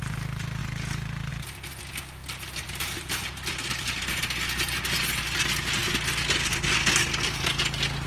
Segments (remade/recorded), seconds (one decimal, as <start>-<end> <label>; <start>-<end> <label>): 0.0-2.2 recorded; 2.2-4.0 remade; 4.0-8.1 recorded